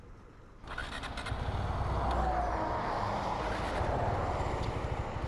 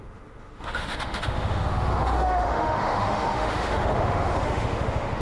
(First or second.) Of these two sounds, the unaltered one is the first